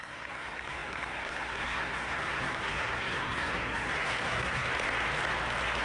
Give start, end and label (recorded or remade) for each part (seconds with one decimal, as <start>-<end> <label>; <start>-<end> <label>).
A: 0.0-4.7 remade; 4.7-5.8 recorded